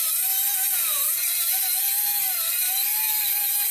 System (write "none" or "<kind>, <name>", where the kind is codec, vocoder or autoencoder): none